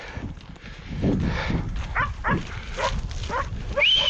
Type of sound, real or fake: real